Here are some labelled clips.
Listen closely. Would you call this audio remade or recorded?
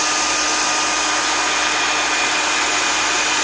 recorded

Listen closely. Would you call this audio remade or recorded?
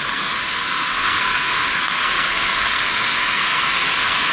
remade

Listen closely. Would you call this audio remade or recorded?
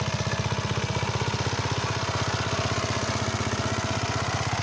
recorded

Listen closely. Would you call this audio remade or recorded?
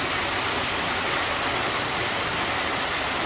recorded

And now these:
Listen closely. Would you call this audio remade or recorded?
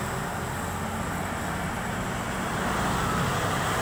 recorded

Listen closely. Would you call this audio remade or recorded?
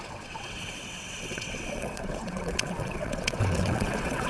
remade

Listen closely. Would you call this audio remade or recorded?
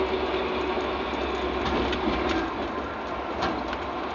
recorded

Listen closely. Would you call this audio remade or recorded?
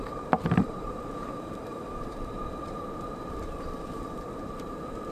remade